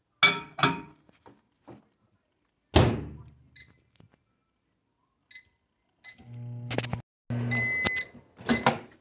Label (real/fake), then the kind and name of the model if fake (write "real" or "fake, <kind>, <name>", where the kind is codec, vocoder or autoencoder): real